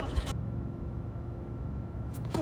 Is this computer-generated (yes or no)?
yes